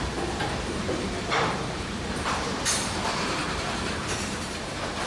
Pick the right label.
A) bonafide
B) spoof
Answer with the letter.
B